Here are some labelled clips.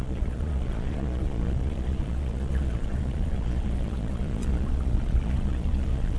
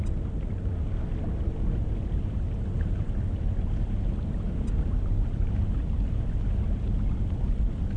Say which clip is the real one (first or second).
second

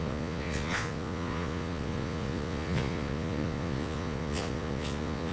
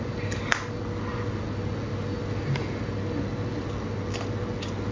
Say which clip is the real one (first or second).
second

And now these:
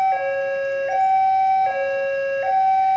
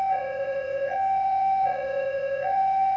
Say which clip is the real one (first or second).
first